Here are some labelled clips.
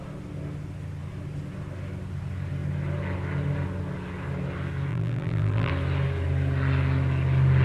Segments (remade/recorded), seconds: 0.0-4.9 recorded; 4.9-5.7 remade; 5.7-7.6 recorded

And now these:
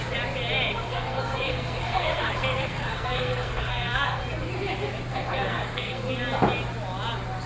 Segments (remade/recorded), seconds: 0.0-0.7 recorded; 0.7-4.2 remade; 4.2-5.1 recorded; 5.1-6.1 remade; 6.1-7.5 recorded

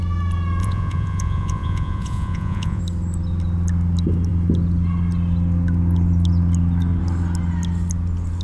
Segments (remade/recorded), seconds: 0.0-0.6 recorded; 0.6-2.8 remade; 2.8-8.4 recorded

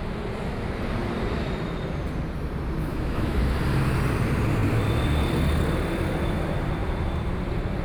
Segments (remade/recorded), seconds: 0.0-2.9 recorded; 2.9-3.4 remade; 3.4-7.8 recorded

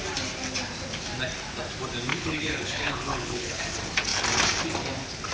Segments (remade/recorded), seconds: 0.0-2.1 recorded; 2.1-3.6 remade; 3.6-5.3 recorded